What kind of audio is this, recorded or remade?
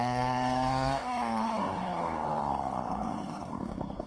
remade